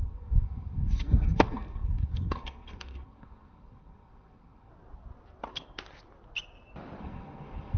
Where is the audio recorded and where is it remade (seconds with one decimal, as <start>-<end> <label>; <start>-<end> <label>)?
0.0-4.7 remade; 4.7-7.0 recorded; 7.0-7.8 remade